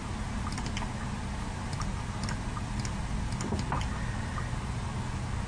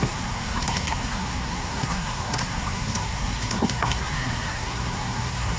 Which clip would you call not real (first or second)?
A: second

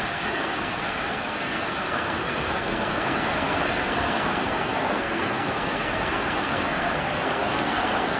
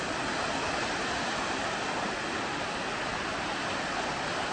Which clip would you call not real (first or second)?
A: first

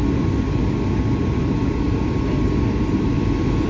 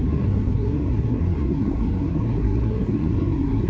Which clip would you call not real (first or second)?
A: second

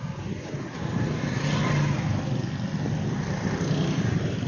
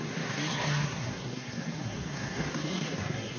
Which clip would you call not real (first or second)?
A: second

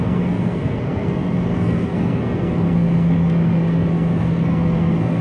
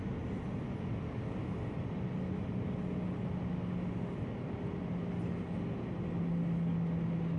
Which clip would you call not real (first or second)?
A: first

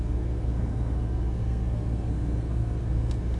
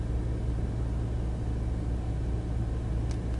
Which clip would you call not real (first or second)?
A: first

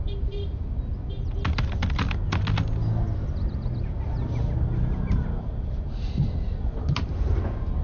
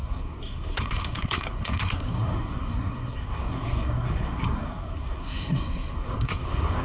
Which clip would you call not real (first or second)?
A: second